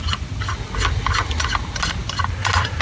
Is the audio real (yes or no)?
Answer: yes